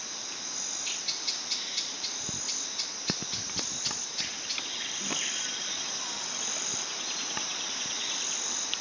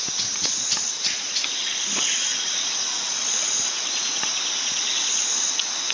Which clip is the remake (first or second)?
second